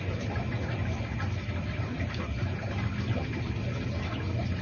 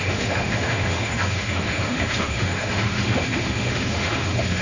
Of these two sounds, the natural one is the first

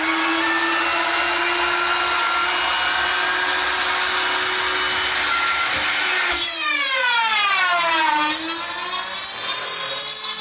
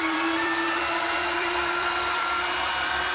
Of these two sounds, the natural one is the first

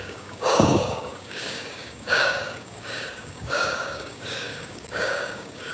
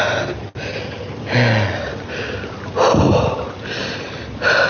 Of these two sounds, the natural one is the second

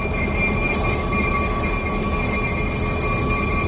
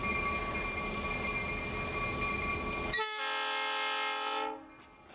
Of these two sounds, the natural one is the second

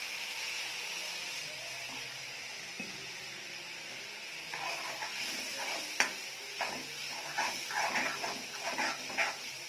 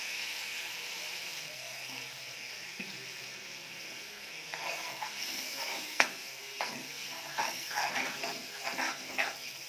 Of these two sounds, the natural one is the first